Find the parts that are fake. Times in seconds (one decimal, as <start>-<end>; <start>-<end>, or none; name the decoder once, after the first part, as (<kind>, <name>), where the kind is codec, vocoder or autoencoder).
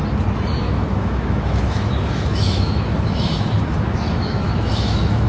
0.6-5.3 (autoencoder, DAC-VAE)